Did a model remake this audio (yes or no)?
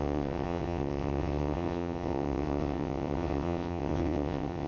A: yes